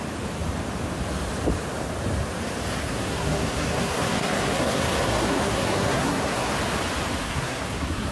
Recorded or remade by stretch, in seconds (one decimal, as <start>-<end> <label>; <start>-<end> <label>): 0.0-2.8 recorded; 2.8-6.5 remade; 6.5-7.2 recorded; 7.2-8.1 remade